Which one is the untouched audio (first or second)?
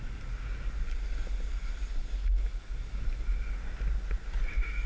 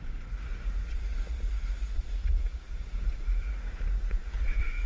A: first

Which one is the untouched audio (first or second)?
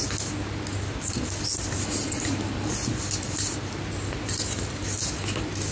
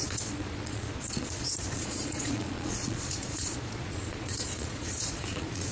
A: first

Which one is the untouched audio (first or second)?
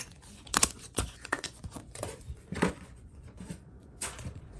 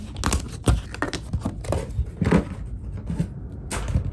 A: second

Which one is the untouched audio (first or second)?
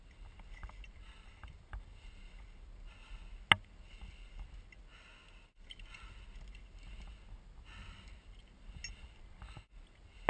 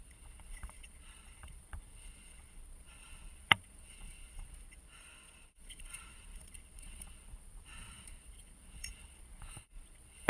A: first